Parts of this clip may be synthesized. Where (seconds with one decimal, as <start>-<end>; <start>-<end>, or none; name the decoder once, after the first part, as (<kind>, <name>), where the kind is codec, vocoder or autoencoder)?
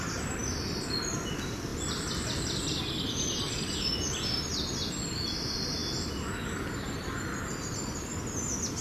none